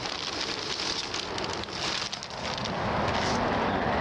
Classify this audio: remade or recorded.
recorded